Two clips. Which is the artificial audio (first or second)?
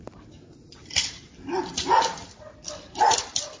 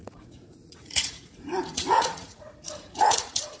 second